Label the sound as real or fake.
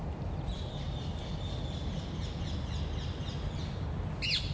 real